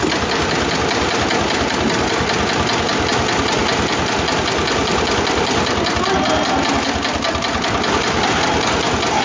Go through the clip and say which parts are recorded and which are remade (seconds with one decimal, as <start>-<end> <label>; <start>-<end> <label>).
0.0-9.2 recorded